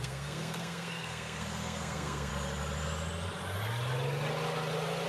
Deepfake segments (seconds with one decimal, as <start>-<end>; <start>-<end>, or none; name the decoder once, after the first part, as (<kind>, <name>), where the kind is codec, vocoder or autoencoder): 0.0-2.3 (codec, SNAC)